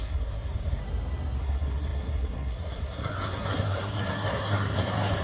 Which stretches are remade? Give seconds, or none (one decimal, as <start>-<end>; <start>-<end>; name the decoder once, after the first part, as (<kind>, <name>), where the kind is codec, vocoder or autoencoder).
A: 0.0-0.8 (codec, SNAC); 1.4-5.2